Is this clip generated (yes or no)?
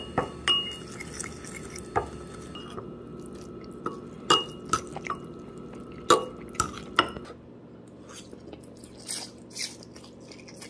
no